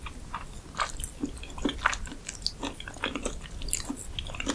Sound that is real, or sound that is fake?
real